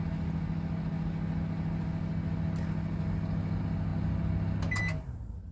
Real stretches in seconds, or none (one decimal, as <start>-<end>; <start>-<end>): 0.0-5.5